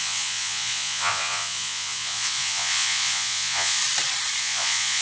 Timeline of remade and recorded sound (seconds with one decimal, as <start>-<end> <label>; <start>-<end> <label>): 0.0-3.8 remade; 3.8-4.4 recorded; 4.4-5.0 remade